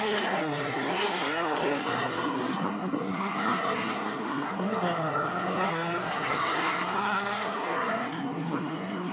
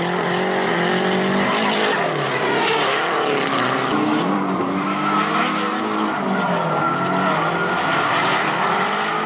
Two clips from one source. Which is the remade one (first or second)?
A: first